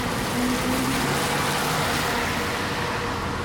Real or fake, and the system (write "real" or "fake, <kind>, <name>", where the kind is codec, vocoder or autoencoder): real